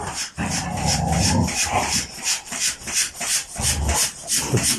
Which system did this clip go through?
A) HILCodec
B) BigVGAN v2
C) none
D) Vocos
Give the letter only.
B